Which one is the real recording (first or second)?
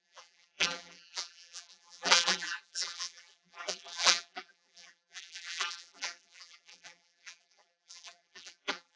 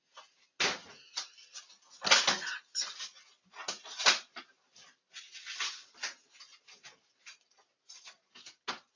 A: second